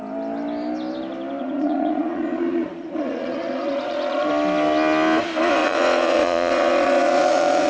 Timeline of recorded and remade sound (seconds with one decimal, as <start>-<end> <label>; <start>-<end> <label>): 0.0-1.4 recorded; 1.4-4.3 remade; 4.3-5.6 recorded; 5.6-7.7 remade